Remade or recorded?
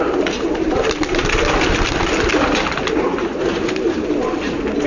recorded